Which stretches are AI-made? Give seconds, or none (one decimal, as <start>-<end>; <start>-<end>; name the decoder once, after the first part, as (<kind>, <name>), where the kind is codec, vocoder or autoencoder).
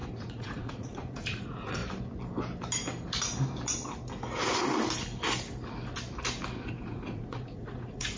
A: 0.0-1.8 (vocoder, Vocos); 6.7-8.2